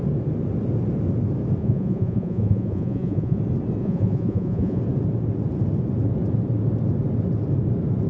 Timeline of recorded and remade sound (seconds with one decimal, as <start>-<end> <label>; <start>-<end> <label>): 0.0-1.6 recorded; 1.6-3.4 remade; 3.4-3.8 recorded; 3.8-4.8 remade; 4.8-8.1 recorded